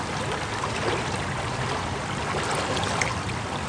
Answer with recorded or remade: recorded